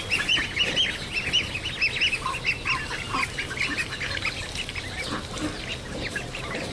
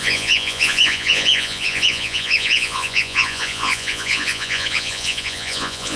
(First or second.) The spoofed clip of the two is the second